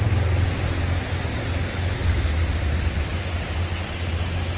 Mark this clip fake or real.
real